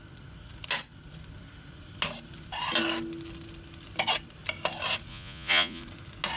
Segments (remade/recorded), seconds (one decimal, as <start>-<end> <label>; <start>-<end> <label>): 0.0-5.1 recorded; 5.1-5.8 remade; 5.8-6.4 recorded